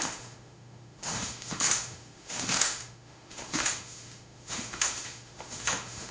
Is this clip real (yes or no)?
no